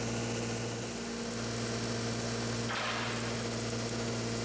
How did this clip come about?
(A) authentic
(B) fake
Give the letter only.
A